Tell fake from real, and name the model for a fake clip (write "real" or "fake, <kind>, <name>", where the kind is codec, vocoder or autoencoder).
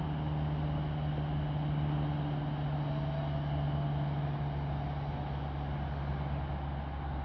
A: real